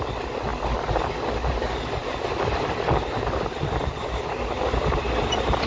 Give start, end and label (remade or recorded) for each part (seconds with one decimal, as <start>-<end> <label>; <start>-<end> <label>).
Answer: 0.0-5.7 recorded